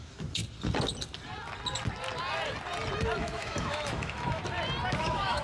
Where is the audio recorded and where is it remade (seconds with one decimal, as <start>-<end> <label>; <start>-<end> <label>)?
0.0-0.4 remade; 0.4-3.2 recorded; 3.2-4.4 remade; 4.4-5.0 recorded; 5.0-5.4 remade